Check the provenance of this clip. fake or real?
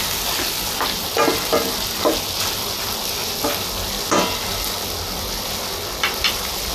real